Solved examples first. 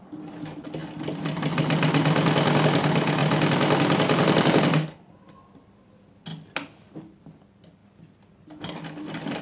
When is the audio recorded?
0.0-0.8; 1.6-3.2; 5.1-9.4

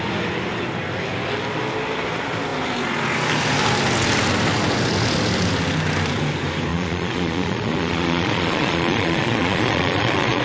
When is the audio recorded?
0.0-6.7

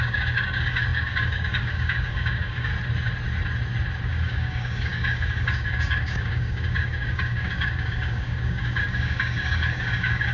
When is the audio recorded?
2.7-4.1

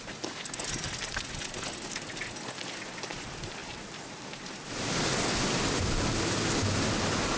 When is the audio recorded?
0.0-3.6; 4.7-7.4